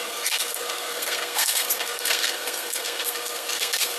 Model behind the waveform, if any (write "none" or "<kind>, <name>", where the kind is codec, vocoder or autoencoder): codec, SNAC